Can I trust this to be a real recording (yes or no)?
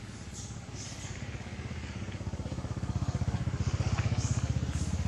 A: no